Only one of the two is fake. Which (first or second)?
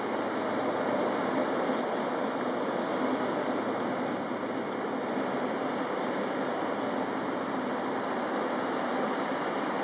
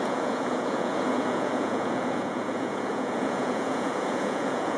second